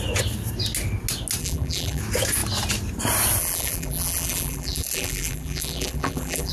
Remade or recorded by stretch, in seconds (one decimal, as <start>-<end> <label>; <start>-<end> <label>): 0.0-1.4 recorded; 1.4-2.0 remade; 2.0-3.4 recorded; 3.4-6.5 remade

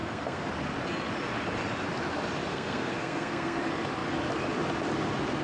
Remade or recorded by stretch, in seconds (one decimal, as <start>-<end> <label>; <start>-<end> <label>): 0.0-0.5 remade; 0.5-2.5 recorded; 2.5-3.6 remade; 3.6-5.4 recorded